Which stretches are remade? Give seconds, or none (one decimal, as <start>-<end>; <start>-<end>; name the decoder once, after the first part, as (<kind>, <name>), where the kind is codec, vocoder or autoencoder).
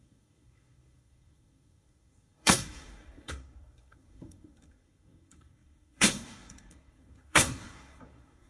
0.0-8.5 (codec, SNAC)